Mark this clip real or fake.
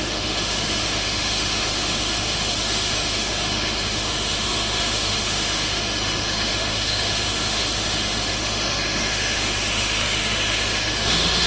fake